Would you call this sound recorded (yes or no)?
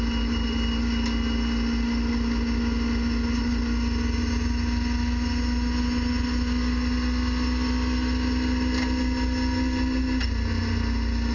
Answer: yes